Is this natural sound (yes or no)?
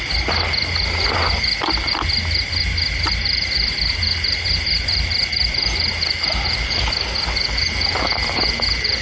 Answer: yes